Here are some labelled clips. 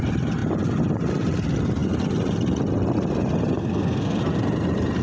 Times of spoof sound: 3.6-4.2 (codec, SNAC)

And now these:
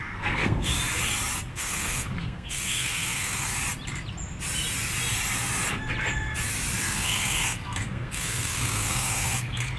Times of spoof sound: 0.0-0.7 (codec, SNAC); 1.5-3.5; 6.8-9.8

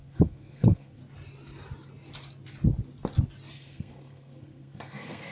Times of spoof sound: 0.0-1.0 (codec, SNAC); 3.5-5.3

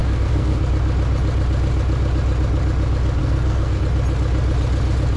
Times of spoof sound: 0.0-0.6 (codec, SNAC); 3.2-3.8